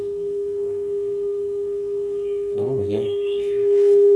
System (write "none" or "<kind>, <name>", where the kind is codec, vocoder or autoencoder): codec, SNAC